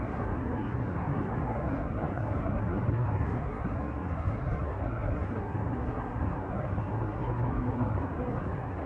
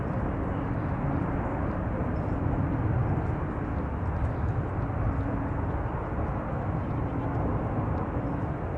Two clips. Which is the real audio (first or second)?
second